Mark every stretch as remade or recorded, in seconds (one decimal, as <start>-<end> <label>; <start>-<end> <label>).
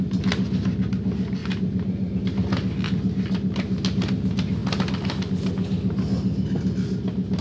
0.0-7.4 recorded